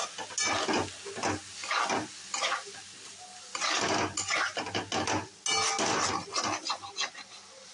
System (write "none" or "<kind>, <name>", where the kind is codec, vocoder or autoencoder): none